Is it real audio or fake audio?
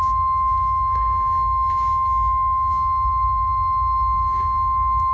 fake